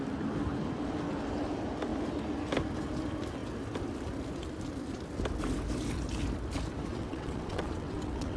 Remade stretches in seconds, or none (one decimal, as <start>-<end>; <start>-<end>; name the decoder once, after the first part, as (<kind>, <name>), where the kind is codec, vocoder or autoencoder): 6.9-8.4 (vocoder, WaveNeXt)